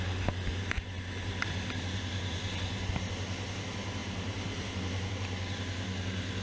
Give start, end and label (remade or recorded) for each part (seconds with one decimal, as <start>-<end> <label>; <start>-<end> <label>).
0.0-0.5 recorded; 0.5-3.1 remade; 3.1-4.0 recorded; 4.0-5.1 remade; 5.1-6.4 recorded

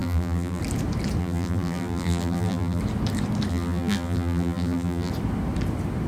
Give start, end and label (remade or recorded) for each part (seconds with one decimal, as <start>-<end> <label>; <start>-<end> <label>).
0.0-0.6 remade; 0.6-1.2 recorded; 1.2-2.8 remade; 2.8-3.5 recorded; 3.5-5.1 remade; 5.1-6.1 recorded

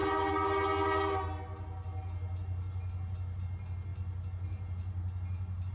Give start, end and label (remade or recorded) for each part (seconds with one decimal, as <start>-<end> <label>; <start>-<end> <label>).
0.0-5.7 recorded

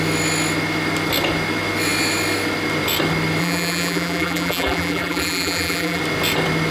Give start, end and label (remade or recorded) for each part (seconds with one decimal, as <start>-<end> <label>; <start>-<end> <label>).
0.0-3.4 recorded; 3.4-6.0 remade; 6.0-6.7 recorded

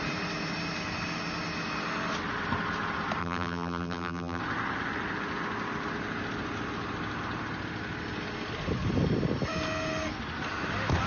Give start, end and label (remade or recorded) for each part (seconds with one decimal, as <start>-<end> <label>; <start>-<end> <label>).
0.0-3.2 recorded; 3.2-4.4 remade; 4.4-11.1 recorded